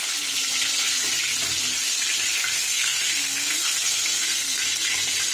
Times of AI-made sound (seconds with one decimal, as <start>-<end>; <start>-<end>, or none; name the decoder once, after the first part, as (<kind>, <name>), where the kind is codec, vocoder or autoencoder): 2.7-4.6 (codec, SNAC)